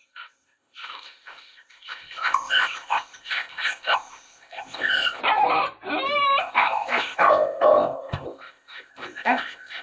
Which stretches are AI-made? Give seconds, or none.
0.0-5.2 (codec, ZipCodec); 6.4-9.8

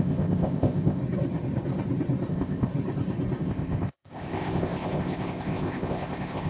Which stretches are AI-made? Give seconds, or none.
0.0-1.0 (codec, ZipCodec); 2.3-2.7; 3.4-6.5

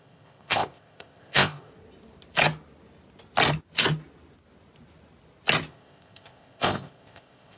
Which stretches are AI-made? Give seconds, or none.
0.0-1.7 (codec, ZipCodec); 5.7-7.6

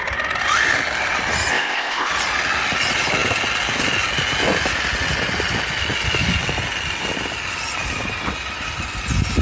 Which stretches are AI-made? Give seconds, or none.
1.5-2.1 (codec, ZipCodec)

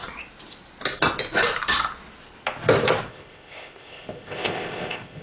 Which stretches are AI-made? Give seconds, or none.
3.1-5.2 (codec, ZipCodec)

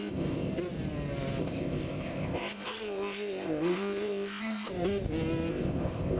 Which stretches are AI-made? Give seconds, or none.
0.0-0.5 (codec, ZipCodec); 1.4-4.7; 5.5-6.2

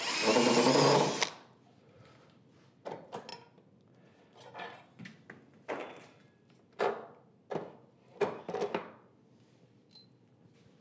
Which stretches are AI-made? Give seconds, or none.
none

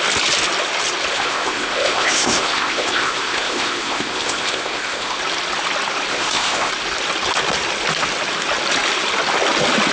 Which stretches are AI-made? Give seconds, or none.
1.1-5.2 (codec, ZipCodec); 6.1-6.7